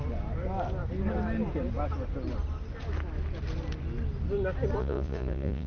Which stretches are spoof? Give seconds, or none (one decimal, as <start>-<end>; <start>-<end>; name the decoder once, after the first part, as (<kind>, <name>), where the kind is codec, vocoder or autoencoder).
4.8-5.7 (vocoder, Vocos)